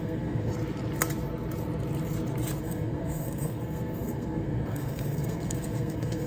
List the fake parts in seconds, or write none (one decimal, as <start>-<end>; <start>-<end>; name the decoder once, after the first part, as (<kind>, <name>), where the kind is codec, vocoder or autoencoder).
0.0-0.5 (codec, SNAC); 2.6-6.3